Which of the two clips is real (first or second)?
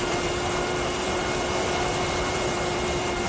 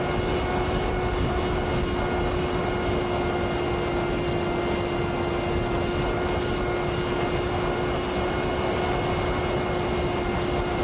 second